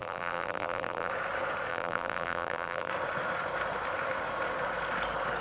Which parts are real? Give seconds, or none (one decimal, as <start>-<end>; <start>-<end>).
1.1-1.7; 2.9-5.4